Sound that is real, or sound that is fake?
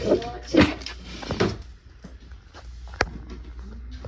real